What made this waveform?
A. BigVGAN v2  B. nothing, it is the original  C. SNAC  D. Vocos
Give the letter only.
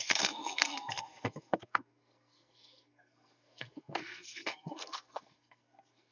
C